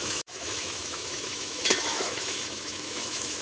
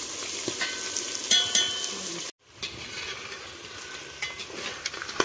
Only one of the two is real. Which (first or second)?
second